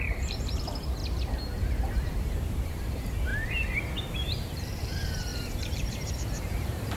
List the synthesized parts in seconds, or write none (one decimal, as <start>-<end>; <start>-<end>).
0.0-1.0; 2.2-3.3; 4.1-7.0